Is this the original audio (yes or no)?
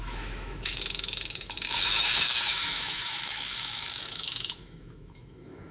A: no